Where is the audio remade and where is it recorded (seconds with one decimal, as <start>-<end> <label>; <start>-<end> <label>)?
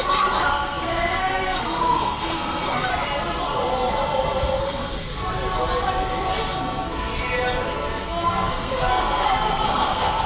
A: 0.0-2.9 remade; 2.9-4.6 recorded; 4.6-5.2 remade; 5.2-6.3 recorded; 6.3-7.1 remade; 7.1-7.7 recorded; 7.7-10.3 remade